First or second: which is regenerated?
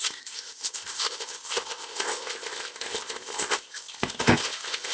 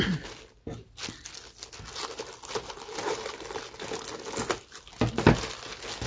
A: first